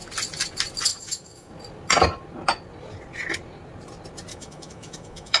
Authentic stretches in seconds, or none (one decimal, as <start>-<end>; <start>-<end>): 0.0-0.9; 1.5-4.3